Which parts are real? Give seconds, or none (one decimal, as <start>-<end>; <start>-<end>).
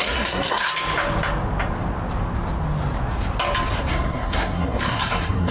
0.7-3.9